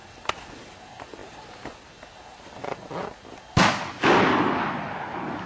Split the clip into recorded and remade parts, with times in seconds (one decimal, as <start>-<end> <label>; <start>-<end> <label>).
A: 0.0-5.5 recorded